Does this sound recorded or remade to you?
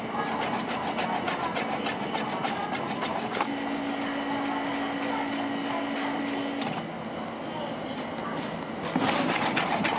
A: recorded